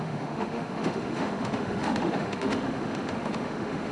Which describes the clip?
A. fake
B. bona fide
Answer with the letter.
A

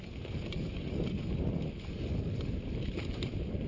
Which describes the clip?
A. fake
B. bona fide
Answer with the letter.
B